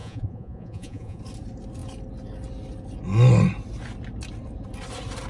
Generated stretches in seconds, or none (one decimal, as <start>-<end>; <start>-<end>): 0.0-1.2